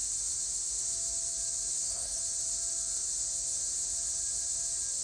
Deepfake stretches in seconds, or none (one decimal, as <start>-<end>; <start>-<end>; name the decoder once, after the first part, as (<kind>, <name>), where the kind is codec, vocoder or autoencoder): 1.7-2.2 (codec, SNAC)

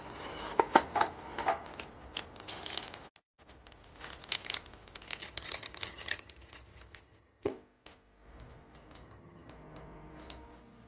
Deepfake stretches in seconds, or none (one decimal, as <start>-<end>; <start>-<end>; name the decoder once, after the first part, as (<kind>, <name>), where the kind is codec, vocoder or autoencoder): 5.2-7.5 (vocoder, HiFi-GAN); 9.0-9.5

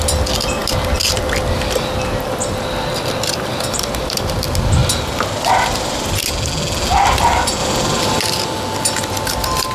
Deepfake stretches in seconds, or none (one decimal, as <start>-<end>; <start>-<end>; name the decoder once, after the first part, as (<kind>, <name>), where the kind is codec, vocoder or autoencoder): none

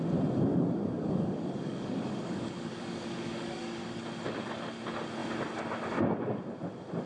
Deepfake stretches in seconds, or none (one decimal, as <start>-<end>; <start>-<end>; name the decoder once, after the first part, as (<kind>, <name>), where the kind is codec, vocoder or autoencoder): 0.5-4.0 (codec, DAC)

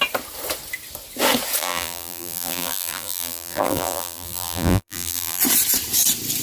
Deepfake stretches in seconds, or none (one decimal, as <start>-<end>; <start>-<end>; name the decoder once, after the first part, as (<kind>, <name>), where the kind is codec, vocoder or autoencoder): 1.6-5.4 (vocoder, BigVGAN v2)

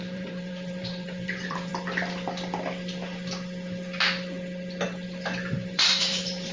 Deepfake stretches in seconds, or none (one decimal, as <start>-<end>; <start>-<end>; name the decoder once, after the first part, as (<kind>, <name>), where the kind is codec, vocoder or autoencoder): 0.0-1.7 (vocoder, BigVGAN v2); 5.5-6.5

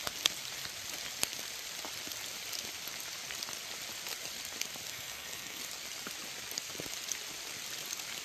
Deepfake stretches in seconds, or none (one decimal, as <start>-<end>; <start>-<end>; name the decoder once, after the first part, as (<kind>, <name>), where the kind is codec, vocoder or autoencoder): 4.9-5.6 (codec, SNAC)